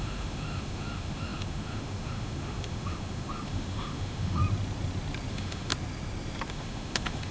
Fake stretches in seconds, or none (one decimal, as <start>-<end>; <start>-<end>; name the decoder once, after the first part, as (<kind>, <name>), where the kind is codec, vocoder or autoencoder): 0.0-4.4 (autoencoder, DAC-VAE); 5.3-5.7; 6.5-7.3